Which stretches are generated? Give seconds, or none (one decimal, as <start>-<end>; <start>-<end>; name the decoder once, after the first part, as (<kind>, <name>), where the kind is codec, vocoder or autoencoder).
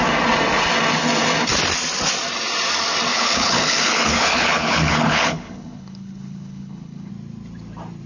3.1-7.1 (codec, HILCodec)